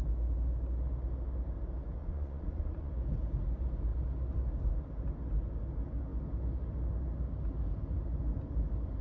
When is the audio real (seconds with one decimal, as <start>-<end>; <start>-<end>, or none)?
0.0-2.0; 2.9-9.0